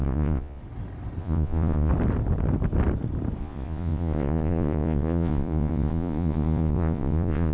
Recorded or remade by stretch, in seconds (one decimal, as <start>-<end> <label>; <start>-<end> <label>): 0.0-0.6 remade; 0.6-1.2 recorded; 1.2-1.9 remade; 1.9-3.4 recorded; 3.4-7.5 remade